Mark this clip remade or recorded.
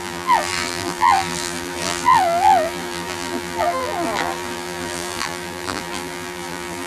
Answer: remade